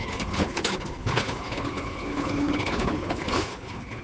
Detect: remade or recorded remade